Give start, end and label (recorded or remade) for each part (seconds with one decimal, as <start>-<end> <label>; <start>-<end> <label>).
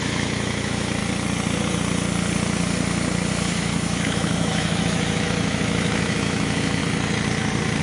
0.0-1.0 remade; 1.0-3.3 recorded; 3.3-6.8 remade; 6.8-7.8 recorded